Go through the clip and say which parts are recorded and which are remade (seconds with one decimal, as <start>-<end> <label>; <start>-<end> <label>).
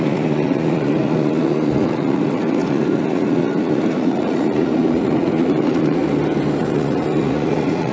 0.0-6.0 remade; 6.0-6.6 recorded; 6.6-7.9 remade